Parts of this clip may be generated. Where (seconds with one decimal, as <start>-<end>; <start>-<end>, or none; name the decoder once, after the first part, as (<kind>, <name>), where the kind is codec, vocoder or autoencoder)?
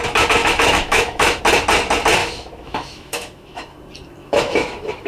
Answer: 0.4-1.4 (autoencoder, DAC-VAE); 2.2-3.8; 4.2-5.1